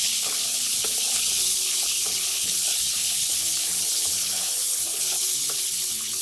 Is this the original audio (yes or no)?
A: no